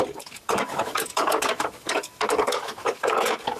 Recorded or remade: remade